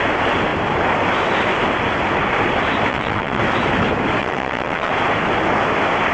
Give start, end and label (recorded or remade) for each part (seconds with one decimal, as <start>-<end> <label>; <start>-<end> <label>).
0.0-2.9 recorded; 2.9-3.4 remade; 3.4-4.2 recorded; 4.2-4.9 remade; 4.9-6.1 recorded

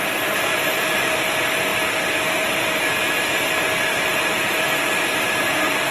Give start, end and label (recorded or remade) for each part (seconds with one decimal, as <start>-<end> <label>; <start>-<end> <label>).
0.0-0.5 remade; 0.5-1.1 recorded; 1.1-1.7 remade; 1.7-4.8 recorded; 4.8-5.9 remade

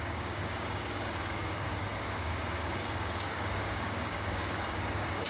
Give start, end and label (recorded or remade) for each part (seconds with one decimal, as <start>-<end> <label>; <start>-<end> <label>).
0.0-5.3 remade

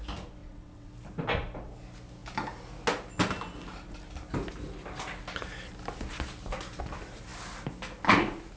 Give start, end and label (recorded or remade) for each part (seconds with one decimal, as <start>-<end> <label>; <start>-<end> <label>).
0.0-0.4 recorded; 0.4-0.9 remade; 0.9-8.6 recorded

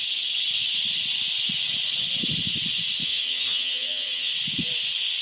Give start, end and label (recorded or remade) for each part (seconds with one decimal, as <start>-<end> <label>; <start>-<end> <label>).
0.0-3.0 recorded; 3.0-4.3 remade; 4.3-5.2 recorded

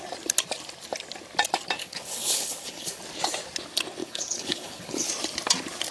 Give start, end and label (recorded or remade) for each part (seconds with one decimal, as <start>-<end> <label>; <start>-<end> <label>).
0.0-1.8 recorded; 1.8-3.0 remade; 3.0-4.0 recorded; 4.0-5.1 remade; 5.1-5.9 recorded

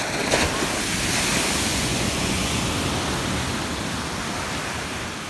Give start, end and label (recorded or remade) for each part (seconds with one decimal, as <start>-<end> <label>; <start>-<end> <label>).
0.0-1.7 recorded; 1.7-2.6 remade; 2.6-5.3 recorded